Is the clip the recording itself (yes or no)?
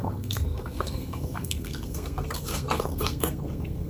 no